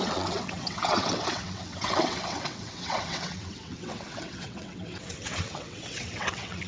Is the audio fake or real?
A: fake